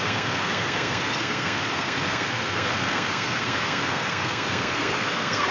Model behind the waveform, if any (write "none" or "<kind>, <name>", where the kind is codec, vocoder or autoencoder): codec, SNAC